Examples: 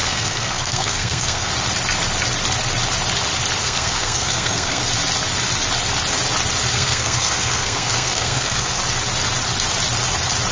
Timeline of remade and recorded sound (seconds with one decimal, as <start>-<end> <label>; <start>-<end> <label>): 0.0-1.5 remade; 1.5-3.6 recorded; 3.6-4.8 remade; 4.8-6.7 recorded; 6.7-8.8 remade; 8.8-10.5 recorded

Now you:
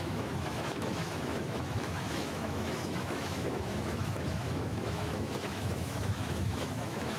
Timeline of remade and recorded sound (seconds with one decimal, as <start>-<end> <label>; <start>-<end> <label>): 0.0-7.2 remade

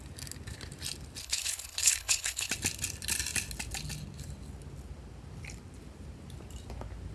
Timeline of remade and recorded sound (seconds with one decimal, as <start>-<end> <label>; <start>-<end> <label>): 0.0-1.2 recorded; 1.2-2.5 remade; 2.5-7.1 recorded